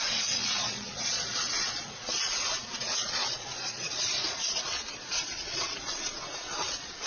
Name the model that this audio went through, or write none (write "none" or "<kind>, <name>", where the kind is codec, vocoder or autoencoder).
vocoder, Vocos